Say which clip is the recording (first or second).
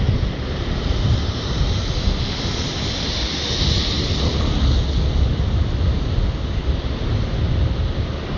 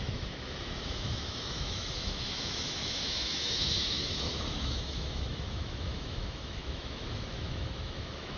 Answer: first